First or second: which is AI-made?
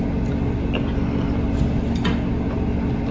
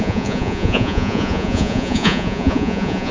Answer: second